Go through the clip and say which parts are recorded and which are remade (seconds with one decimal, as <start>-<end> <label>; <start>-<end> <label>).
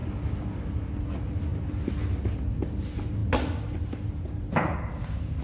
0.0-5.4 recorded